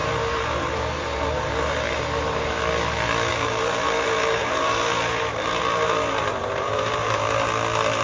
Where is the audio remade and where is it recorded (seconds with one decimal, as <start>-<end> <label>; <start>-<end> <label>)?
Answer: 0.0-2.6 remade; 2.6-3.3 recorded; 3.3-7.5 remade; 7.5-8.0 recorded